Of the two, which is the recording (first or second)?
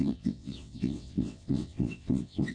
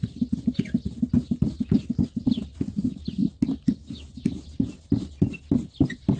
second